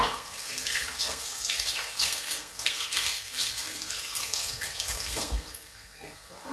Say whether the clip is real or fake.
fake